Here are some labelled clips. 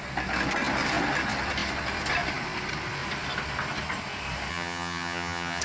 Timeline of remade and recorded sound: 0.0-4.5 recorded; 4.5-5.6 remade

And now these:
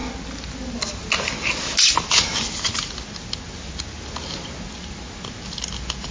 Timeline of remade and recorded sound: 0.0-6.1 recorded

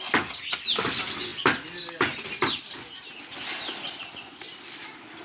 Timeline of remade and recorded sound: 0.0-5.2 recorded

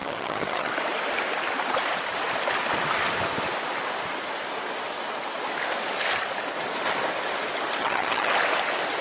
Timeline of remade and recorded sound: 0.0-0.7 remade; 0.7-7.8 recorded; 7.8-8.3 remade; 8.3-9.0 recorded

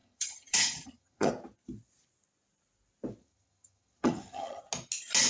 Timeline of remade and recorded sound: 0.0-1.3 remade; 1.3-3.2 recorded; 3.2-4.6 remade; 4.6-5.3 recorded

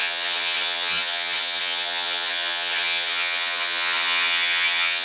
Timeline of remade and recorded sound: 0.0-5.0 remade